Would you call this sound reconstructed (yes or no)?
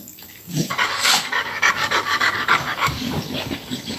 yes